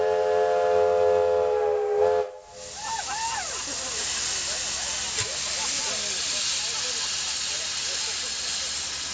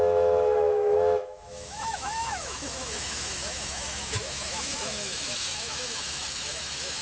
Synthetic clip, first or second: second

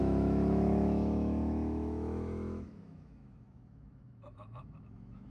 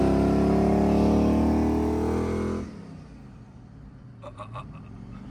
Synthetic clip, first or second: first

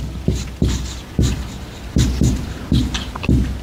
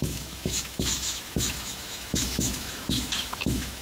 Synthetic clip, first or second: second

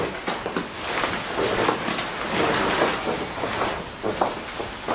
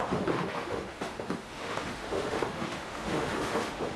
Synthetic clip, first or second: second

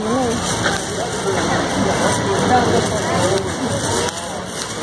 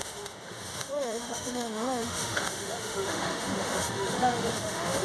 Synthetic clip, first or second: second